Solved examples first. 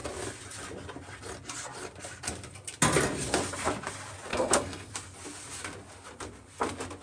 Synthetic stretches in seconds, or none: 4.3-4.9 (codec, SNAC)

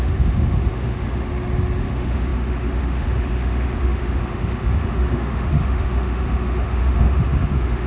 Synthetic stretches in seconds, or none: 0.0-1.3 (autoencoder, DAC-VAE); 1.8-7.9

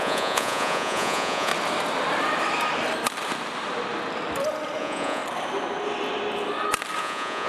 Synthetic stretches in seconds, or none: 0.0-1.5 (vocoder, Vocos); 4.8-5.2; 7.0-7.5